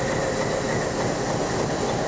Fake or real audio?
real